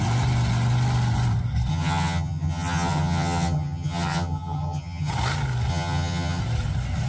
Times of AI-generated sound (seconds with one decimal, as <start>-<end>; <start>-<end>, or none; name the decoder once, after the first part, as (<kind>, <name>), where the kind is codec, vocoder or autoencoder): 1.7-5.1 (vocoder, HiFi-GAN); 5.7-6.4